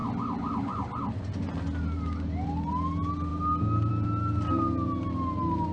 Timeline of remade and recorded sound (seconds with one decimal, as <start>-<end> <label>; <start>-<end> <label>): 0.0-5.7 recorded